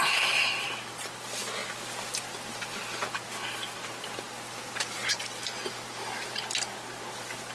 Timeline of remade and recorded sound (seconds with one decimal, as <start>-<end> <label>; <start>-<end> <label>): 0.0-7.5 recorded